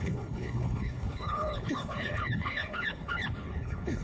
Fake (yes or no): yes